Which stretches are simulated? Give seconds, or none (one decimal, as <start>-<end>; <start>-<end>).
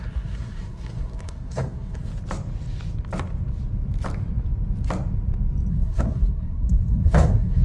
0.0-2.1; 5.7-7.6